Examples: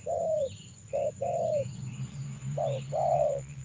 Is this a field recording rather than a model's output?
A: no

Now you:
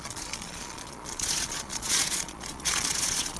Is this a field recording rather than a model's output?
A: no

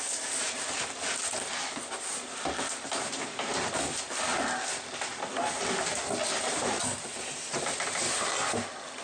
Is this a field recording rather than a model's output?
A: yes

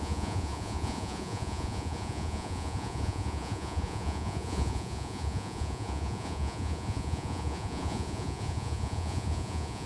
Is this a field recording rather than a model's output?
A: no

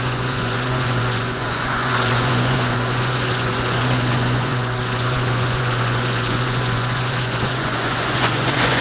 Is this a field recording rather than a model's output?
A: no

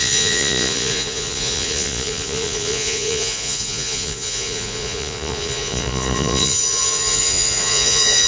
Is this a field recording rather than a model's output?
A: no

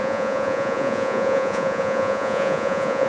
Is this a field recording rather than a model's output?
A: no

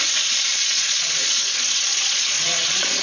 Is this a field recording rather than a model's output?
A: no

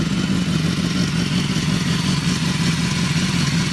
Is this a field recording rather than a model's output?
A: no